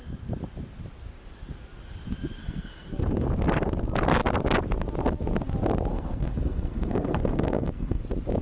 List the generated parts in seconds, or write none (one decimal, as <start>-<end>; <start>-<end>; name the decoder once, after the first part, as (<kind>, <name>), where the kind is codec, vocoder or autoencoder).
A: 2.4-2.9 (codec, SNAC); 5.9-8.0